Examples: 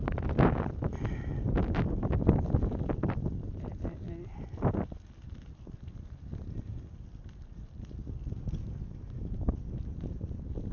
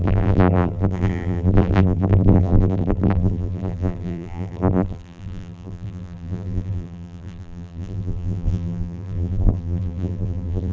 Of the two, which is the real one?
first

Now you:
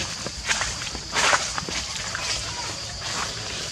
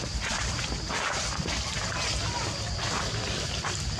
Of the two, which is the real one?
second